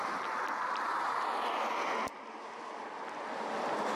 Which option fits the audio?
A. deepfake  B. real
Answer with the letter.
B